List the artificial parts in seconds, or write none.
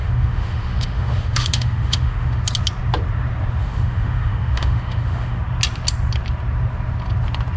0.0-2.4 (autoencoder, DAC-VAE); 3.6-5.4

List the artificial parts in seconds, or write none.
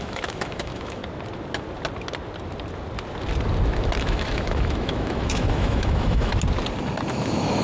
0.0-1.0 (autoencoder, DAC-VAE); 4.0-6.3; 7.1-7.6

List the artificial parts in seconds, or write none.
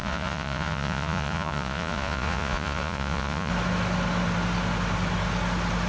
0.0-3.5 (vocoder, Vocos)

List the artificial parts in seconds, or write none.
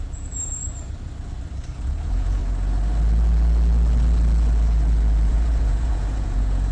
0.0-0.6 (vocoder, Vocos); 1.7-2.4; 5.3-6.7